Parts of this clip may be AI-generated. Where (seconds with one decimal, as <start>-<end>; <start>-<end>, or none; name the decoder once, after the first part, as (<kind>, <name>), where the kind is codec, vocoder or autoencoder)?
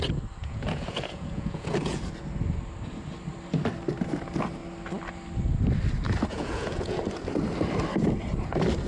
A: 0.4-2.0 (vocoder, Vocos); 6.3-7.0